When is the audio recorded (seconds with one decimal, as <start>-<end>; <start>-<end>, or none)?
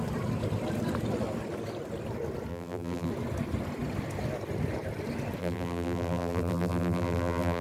0.0-2.5; 3.1-5.4